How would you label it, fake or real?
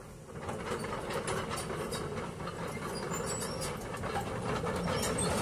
real